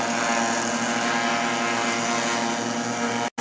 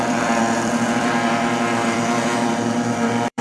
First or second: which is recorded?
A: first